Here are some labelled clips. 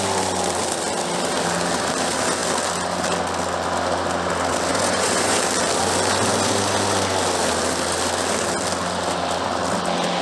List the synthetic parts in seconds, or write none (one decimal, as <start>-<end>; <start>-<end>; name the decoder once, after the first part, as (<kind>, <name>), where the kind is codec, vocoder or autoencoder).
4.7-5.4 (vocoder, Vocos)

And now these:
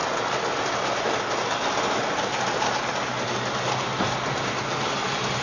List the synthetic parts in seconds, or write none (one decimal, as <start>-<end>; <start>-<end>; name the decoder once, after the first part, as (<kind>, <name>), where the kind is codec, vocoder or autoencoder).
none

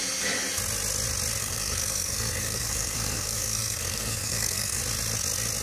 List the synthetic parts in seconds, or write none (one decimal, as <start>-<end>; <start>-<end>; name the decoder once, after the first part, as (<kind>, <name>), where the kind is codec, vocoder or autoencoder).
1.4-4.8 (codec, SNAC)